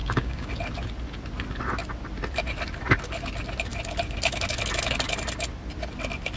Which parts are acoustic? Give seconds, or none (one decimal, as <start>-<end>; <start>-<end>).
0.5-6.4